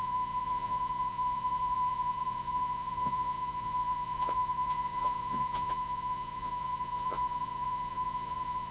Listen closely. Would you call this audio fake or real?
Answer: fake